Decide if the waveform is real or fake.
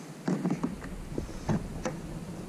real